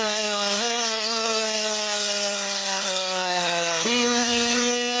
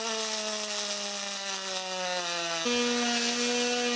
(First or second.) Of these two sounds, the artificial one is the first